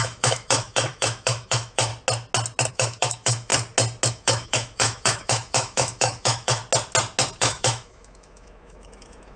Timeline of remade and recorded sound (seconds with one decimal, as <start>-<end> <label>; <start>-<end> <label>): 0.0-1.9 remade; 1.9-2.7 recorded; 2.7-3.5 remade; 3.5-4.1 recorded; 4.1-6.6 remade; 6.6-7.4 recorded; 7.4-9.4 remade